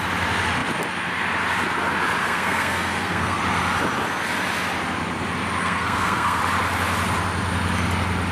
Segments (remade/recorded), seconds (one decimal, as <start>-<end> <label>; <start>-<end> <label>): 0.0-2.2 recorded; 2.2-3.4 remade; 3.4-5.6 recorded; 5.6-6.4 remade; 6.4-8.3 recorded